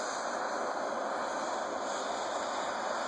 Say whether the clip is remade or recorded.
recorded